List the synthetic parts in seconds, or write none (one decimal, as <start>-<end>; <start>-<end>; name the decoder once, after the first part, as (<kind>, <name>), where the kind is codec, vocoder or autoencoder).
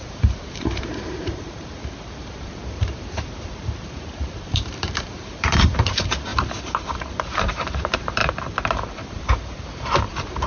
0.0-8.2 (vocoder, BigVGAN v2); 8.9-10.5